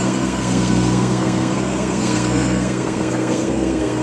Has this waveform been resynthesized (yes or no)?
yes